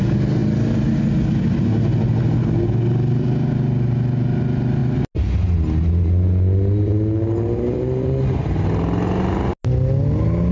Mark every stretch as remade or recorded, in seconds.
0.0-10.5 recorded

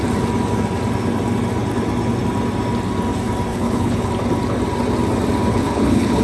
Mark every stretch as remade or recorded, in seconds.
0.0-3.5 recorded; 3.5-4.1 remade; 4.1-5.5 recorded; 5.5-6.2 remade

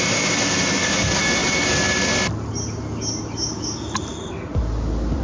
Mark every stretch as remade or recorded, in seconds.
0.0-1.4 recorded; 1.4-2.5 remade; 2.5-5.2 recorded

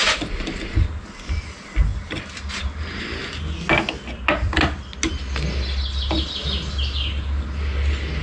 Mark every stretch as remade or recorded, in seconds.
0.0-8.2 recorded

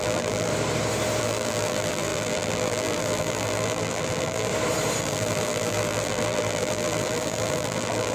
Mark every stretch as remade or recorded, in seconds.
0.0-0.5 remade; 0.5-1.2 recorded; 1.2-4.5 remade; 4.5-5.0 recorded; 5.0-8.1 remade

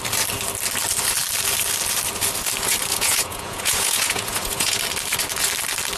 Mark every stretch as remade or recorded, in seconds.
0.0-2.9 recorded; 2.9-4.8 remade; 4.8-6.0 recorded

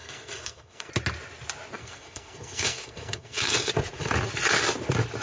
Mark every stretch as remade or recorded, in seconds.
0.0-0.9 remade; 0.9-1.8 recorded; 1.8-3.7 remade; 3.7-5.2 recorded

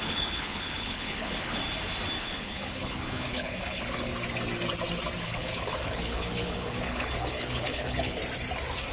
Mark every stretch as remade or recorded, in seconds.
0.0-1.6 remade; 1.6-2.2 recorded; 2.2-4.1 remade; 4.1-5.2 recorded; 5.2-8.2 remade; 8.2-8.9 recorded